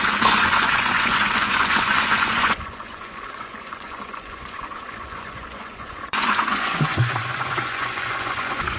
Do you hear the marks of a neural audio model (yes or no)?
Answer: yes